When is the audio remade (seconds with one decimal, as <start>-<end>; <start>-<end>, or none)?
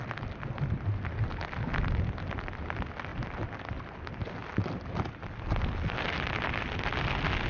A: none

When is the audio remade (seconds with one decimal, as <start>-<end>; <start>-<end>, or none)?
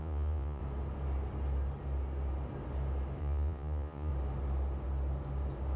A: 0.0-0.6; 3.2-4.1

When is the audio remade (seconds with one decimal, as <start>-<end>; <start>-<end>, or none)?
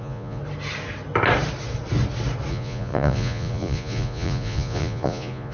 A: 0.0-0.4; 2.5-5.5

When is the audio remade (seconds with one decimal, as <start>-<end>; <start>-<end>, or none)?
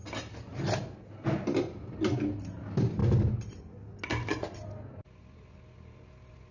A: none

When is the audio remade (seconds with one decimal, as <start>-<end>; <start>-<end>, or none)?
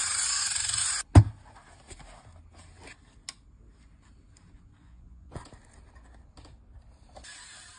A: 4.8-5.4